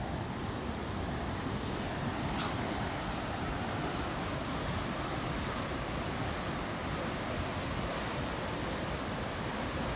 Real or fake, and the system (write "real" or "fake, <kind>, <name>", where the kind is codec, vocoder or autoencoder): real